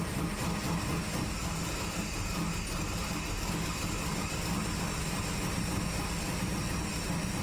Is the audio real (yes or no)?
yes